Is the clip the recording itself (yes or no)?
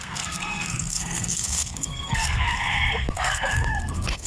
no